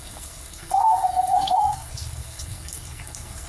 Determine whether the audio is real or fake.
fake